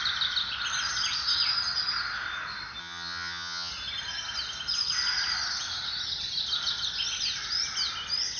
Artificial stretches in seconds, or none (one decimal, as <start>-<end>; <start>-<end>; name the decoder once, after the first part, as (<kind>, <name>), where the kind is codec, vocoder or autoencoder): 2.8-3.7 (vocoder, HiFi-GAN)